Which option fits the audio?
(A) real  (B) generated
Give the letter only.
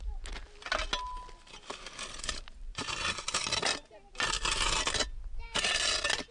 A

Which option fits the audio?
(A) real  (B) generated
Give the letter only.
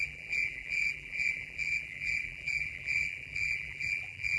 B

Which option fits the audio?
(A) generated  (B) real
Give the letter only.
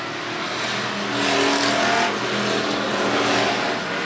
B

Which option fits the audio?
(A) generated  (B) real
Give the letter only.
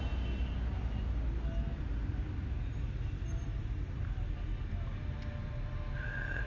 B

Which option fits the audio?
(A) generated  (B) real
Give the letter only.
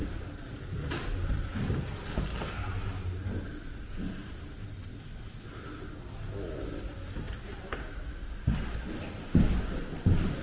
B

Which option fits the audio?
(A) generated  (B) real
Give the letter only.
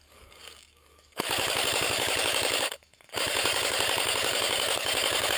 A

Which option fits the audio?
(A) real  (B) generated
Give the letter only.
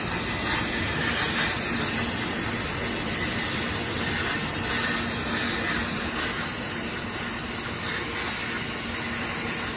A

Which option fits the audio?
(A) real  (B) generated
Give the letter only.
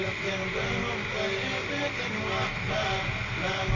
A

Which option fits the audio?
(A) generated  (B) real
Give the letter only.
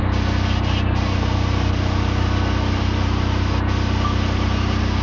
B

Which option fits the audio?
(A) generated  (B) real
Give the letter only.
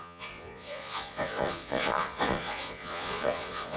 A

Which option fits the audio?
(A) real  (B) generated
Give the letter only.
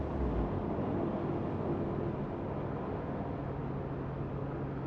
A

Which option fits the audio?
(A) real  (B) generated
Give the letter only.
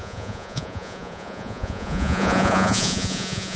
B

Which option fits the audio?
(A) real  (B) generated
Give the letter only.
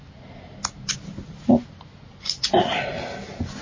A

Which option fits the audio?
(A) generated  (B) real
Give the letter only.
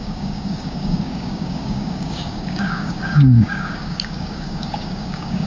A